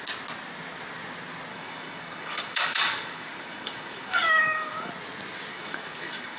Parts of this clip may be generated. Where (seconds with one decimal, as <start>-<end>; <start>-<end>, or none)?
1.5-4.9; 5.5-6.4